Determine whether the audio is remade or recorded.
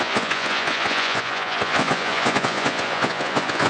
remade